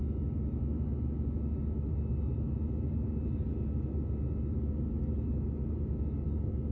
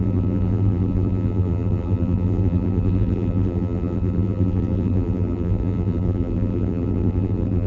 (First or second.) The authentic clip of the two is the first